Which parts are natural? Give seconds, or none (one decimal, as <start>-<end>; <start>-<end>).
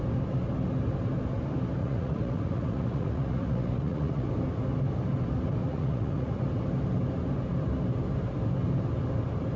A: 0.0-1.8; 4.3-5.6; 6.4-9.6